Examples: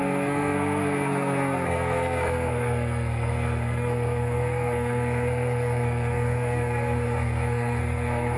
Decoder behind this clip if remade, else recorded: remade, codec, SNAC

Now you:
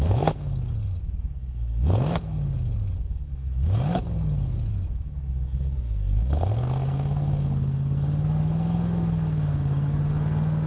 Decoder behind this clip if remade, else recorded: remade, codec, SNAC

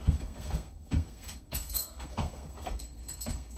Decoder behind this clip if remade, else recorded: remade, codec, SNAC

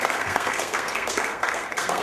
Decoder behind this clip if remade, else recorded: remade, codec, SNAC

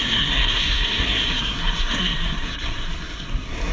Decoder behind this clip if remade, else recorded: remade, codec, SNAC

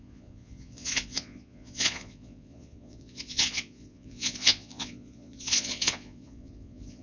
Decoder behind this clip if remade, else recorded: remade, vocoder, Vocos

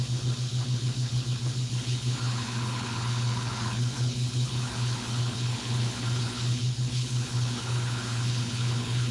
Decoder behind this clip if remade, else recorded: remade, codec, HILCodec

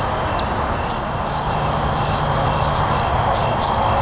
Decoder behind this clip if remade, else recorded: recorded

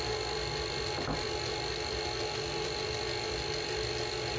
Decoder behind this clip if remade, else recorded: recorded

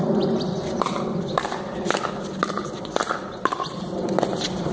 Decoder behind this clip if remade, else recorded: remade, vocoder, BigVGAN v2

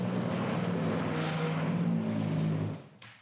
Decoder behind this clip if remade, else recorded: recorded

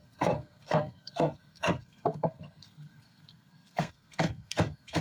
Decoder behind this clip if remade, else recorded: remade, codec, SNAC